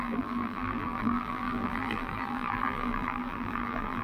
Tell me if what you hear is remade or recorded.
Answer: remade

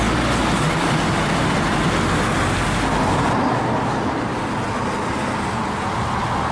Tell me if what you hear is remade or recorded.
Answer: recorded